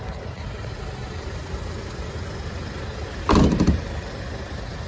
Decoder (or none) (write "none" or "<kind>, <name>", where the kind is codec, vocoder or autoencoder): none